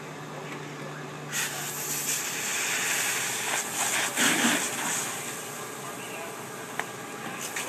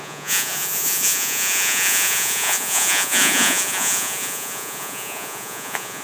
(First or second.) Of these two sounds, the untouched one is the first